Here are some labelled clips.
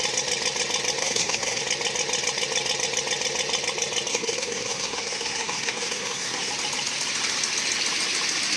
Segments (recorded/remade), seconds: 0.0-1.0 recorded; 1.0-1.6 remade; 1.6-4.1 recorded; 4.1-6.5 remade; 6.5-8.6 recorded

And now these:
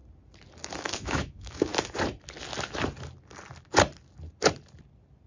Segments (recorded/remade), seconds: 0.0-0.8 recorded; 0.8-1.7 remade; 1.7-5.3 recorded

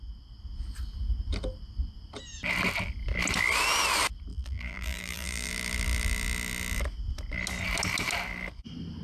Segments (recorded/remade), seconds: 0.0-4.3 recorded; 4.3-5.5 remade; 5.5-9.0 recorded

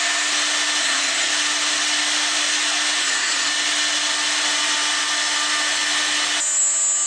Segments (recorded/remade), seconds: 0.0-0.8 recorded; 0.8-1.3 remade; 1.3-3.0 recorded; 3.0-3.5 remade; 3.5-7.1 recorded